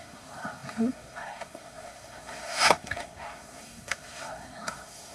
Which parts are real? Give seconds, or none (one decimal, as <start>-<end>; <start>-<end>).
none